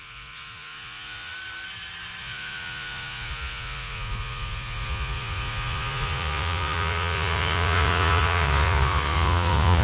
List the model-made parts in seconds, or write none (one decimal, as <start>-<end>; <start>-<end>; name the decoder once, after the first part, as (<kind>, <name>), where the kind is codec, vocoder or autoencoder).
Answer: 0.0-1.3 (vocoder, Vocos); 2.2-9.8